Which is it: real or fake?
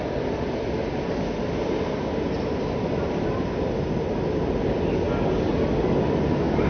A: real